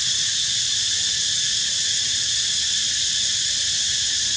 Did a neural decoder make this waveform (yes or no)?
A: no